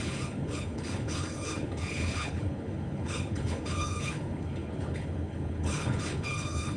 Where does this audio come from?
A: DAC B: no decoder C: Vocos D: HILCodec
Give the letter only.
D